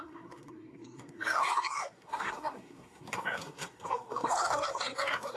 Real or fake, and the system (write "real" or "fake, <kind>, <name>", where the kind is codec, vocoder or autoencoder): fake, codec, SNAC